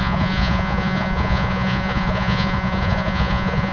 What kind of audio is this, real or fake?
fake